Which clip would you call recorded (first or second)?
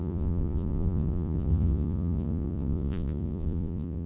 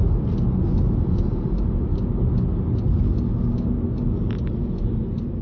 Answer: second